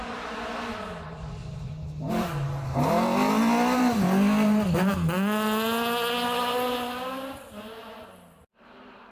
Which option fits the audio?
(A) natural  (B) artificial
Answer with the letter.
A